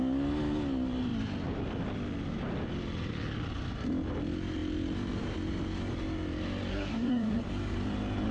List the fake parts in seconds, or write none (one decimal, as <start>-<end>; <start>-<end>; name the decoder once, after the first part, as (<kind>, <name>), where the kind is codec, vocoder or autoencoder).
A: 6.7-7.4 (codec, SNAC)